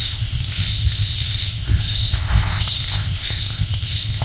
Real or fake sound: fake